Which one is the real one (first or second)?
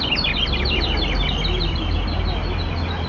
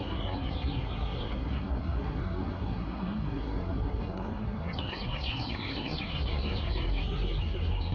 first